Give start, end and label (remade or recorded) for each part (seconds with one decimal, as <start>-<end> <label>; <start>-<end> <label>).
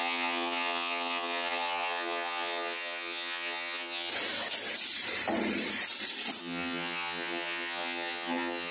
0.0-4.1 remade; 4.1-6.4 recorded; 6.4-8.7 remade